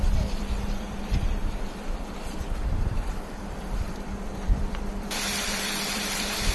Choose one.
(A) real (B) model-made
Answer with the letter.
B